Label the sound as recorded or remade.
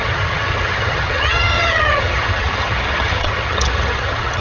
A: remade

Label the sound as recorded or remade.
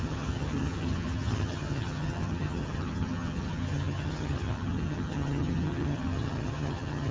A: remade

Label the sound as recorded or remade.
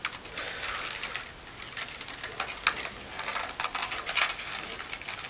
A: recorded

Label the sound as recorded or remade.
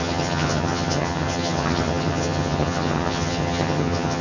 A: remade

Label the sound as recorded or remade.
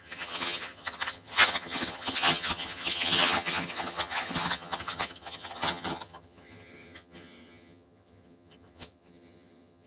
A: remade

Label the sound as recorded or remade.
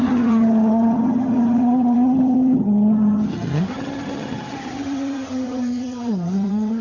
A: remade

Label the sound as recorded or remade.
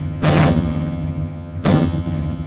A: remade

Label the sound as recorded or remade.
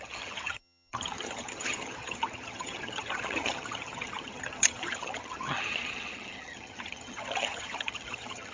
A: remade